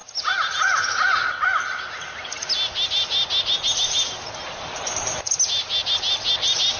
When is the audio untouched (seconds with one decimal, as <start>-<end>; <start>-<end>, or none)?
0.0-6.8